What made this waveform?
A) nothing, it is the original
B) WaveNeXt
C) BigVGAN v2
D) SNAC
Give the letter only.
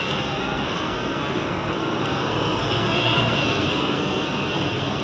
D